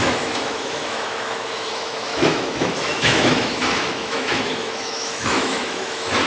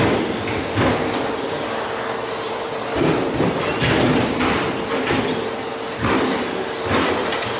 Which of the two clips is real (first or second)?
second